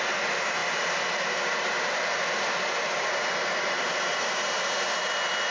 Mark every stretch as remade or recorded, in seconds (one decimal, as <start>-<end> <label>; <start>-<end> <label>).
0.0-5.5 recorded